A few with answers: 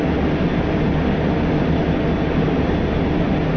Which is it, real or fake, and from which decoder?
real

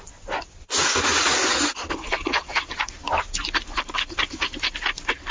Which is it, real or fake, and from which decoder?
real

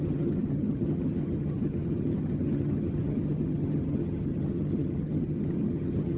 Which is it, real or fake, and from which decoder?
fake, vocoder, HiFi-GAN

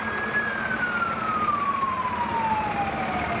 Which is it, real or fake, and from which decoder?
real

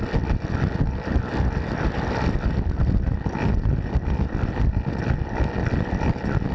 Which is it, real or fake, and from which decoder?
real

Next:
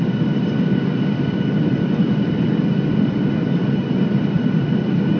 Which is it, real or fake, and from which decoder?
real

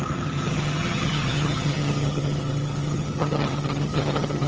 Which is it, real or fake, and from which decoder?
fake, vocoder, HiFi-GAN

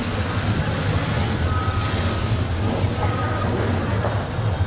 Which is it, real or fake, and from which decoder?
real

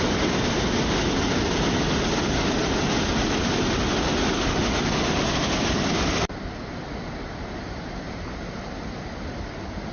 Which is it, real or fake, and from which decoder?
real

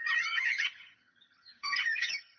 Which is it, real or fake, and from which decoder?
fake, vocoder, HiFi-GAN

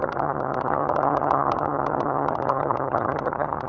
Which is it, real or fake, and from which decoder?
fake, vocoder, HiFi-GAN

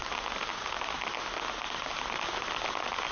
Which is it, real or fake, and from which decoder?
real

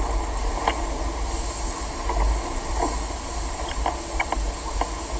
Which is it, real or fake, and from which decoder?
real